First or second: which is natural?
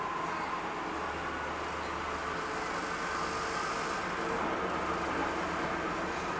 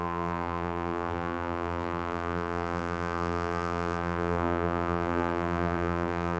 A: first